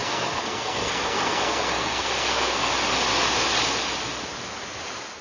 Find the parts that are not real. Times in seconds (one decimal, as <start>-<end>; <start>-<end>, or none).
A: 0.0-2.7